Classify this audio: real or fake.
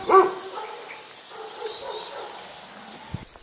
real